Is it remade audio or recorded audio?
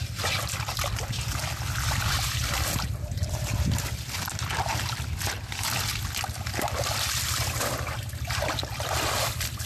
recorded